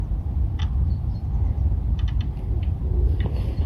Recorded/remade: recorded